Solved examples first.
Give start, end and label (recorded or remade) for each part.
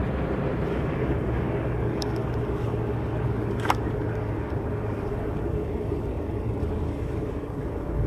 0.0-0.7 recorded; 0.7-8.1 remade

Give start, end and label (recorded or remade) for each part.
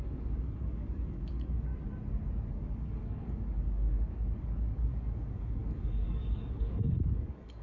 0.0-1.7 remade; 1.7-2.5 recorded; 2.5-7.6 remade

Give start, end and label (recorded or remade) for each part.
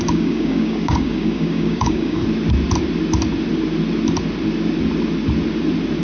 0.0-2.2 remade; 2.2-6.0 recorded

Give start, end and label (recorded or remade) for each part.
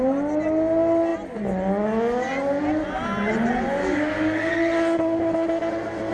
0.0-3.8 recorded; 3.8-4.5 remade; 4.5-6.1 recorded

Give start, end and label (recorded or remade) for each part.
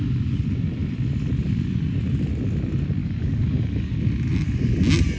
0.0-3.0 recorded; 3.0-3.9 remade; 3.9-5.2 recorded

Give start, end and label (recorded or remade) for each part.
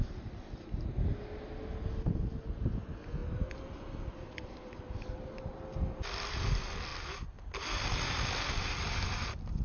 0.0-9.6 recorded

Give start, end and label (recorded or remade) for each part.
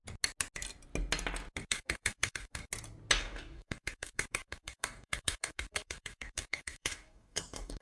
0.0-1.7 recorded; 1.7-2.6 remade; 2.6-3.2 recorded; 3.2-7.8 remade